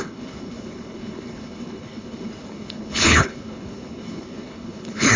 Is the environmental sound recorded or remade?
remade